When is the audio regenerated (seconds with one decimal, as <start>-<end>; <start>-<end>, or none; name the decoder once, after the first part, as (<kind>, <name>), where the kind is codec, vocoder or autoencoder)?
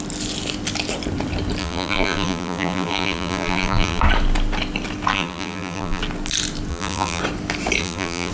1.6-4.0 (vocoder, BigVGAN v2); 5.1-6.0; 6.7-7.2; 7.8-8.3